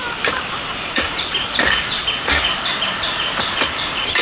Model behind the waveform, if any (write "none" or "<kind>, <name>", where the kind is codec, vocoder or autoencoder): none